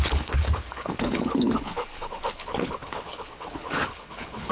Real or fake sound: fake